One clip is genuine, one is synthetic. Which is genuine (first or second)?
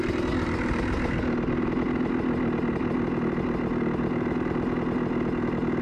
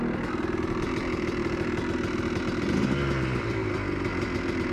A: first